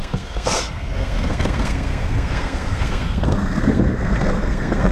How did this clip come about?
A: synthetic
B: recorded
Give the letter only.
A